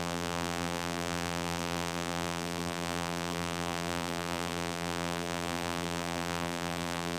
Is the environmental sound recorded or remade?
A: remade